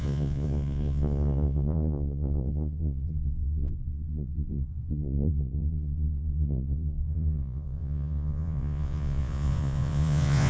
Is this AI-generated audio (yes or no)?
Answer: yes